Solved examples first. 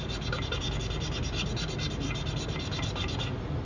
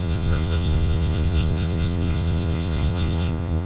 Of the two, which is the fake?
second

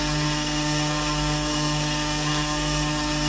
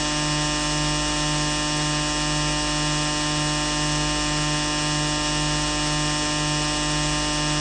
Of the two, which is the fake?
first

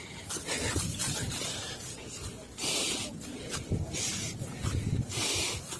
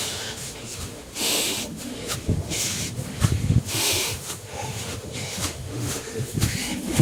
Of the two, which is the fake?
second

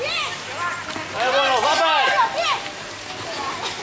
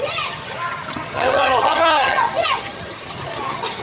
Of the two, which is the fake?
second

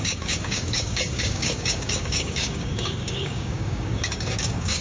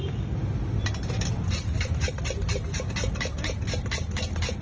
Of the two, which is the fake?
first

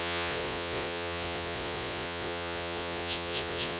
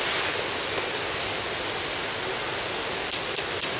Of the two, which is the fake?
first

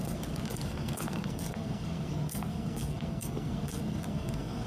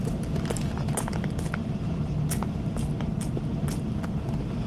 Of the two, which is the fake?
first